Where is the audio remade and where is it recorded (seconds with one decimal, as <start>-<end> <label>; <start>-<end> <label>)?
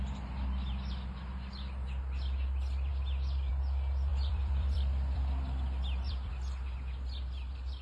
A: 0.0-4.1 recorded; 4.1-6.3 remade; 6.3-7.8 recorded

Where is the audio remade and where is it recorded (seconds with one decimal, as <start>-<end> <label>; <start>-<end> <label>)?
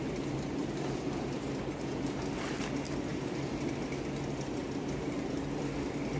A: 0.0-0.6 recorded; 0.6-2.3 remade; 2.3-3.1 recorded; 3.1-3.7 remade; 3.7-4.6 recorded; 4.6-5.4 remade; 5.4-6.2 recorded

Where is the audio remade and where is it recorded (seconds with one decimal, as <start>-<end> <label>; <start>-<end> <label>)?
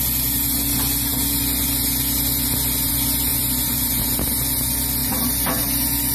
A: 0.0-3.3 recorded; 3.3-4.0 remade; 4.0-5.0 recorded; 5.0-5.6 remade; 5.6-6.1 recorded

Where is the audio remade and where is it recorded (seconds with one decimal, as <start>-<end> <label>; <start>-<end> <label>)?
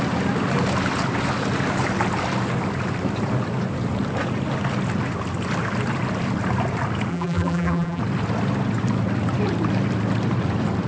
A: 0.0-7.1 recorded; 7.1-8.0 remade; 8.0-10.9 recorded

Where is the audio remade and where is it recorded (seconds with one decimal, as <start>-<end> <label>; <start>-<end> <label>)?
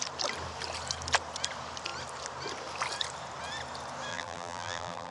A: 0.0-4.1 recorded; 4.1-5.1 remade